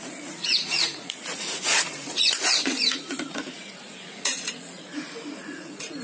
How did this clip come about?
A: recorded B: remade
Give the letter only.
B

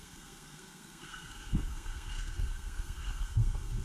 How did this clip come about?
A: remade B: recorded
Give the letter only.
A